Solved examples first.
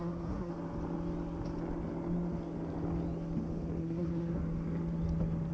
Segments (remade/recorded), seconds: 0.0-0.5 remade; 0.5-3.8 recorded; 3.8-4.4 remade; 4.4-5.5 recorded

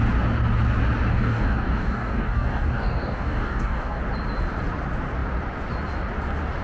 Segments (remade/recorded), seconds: 0.0-1.1 recorded; 1.1-4.0 remade; 4.0-6.6 recorded

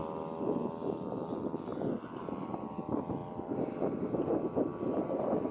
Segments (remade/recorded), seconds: 0.0-1.7 recorded; 1.7-2.2 remade; 2.2-3.2 recorded; 3.2-4.3 remade; 4.3-5.5 recorded

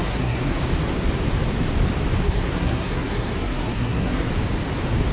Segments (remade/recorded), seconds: 0.0-0.6 remade; 0.6-2.2 recorded; 2.2-4.3 remade; 4.3-5.1 recorded

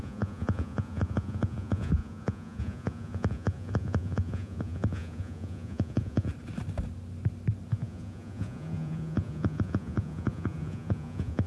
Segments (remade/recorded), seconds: 0.0-6.3 remade; 6.3-7.7 recorded; 7.7-11.5 remade

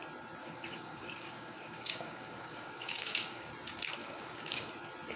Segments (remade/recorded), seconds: 0.0-0.4 recorded; 0.4-3.5 remade; 3.5-4.0 recorded; 4.0-4.7 remade; 4.7-5.2 recorded

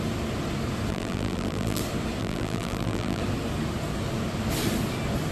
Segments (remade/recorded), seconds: 0.0-0.9 recorded; 0.9-1.8 remade; 1.8-2.2 recorded; 2.2-3.2 remade; 3.2-5.3 recorded